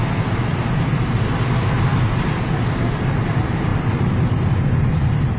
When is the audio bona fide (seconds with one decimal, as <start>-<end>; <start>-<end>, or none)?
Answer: 0.0-5.4